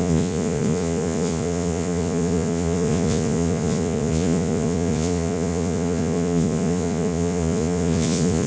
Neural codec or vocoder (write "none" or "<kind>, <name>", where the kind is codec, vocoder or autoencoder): vocoder, Vocos